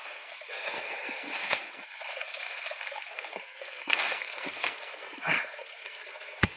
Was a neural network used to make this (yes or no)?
yes